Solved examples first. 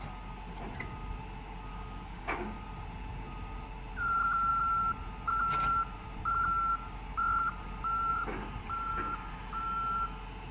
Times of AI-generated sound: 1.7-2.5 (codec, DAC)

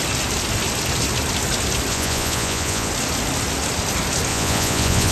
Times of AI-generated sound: 1.9-2.9 (vocoder, Vocos); 4.3-5.1

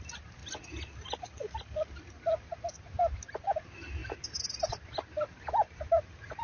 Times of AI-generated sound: none

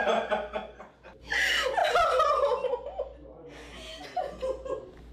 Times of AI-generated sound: none

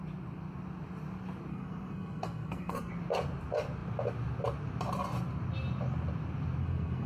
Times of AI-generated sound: 1.5-2.9 (codec, SNAC); 6.6-7.1

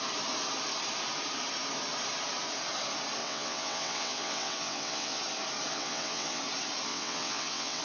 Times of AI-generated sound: 3.2-5.2 (vocoder, WaveNeXt); 5.7-6.4; 6.9-7.8

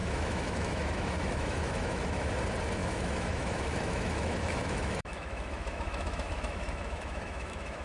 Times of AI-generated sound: 0.0-2.3 (autoencoder, DAC-VAE); 2.8-7.8